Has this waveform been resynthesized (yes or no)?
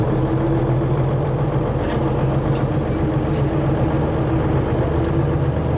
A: no